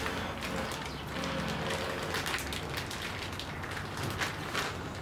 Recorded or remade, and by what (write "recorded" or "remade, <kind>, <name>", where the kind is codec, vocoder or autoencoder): recorded